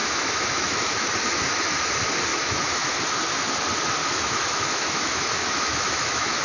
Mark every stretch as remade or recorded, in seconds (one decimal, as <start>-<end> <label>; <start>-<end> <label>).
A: 0.0-1.1 remade; 1.1-2.3 recorded; 2.3-3.0 remade; 3.0-4.0 recorded; 4.0-6.4 remade